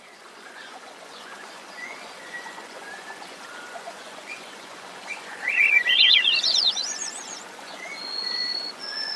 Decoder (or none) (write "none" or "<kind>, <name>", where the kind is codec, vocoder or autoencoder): vocoder, Vocos